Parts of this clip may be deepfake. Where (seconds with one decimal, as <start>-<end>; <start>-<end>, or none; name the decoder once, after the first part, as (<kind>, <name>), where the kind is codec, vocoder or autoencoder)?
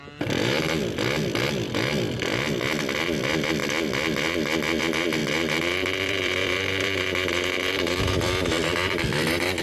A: 5.2-9.6 (vocoder, BigVGAN v2)